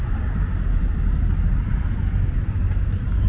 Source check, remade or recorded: remade